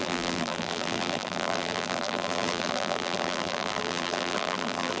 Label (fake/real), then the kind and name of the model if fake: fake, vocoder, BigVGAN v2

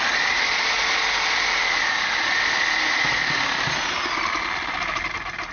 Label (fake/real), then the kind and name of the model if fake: real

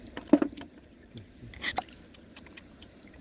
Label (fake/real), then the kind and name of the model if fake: fake, vocoder, BigVGAN v2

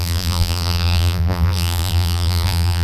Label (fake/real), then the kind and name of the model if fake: fake, vocoder, BigVGAN v2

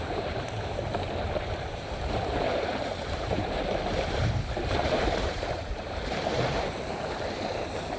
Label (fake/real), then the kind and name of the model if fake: fake, vocoder, BigVGAN v2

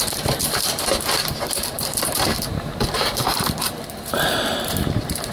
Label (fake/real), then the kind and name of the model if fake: fake, vocoder, BigVGAN v2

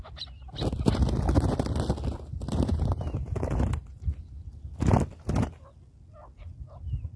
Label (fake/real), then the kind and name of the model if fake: real